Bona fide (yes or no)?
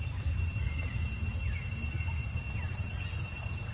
yes